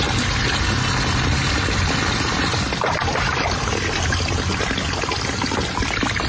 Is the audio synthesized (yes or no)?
no